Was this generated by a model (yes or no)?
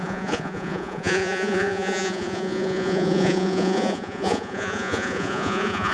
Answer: yes